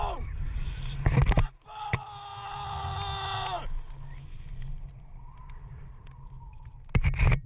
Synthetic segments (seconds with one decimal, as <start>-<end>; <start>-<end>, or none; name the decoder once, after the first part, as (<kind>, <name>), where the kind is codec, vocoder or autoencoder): none